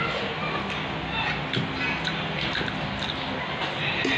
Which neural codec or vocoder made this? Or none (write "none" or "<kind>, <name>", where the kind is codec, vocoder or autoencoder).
none